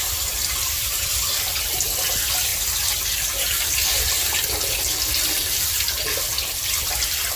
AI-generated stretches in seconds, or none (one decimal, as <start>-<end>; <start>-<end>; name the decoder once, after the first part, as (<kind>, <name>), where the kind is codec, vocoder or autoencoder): none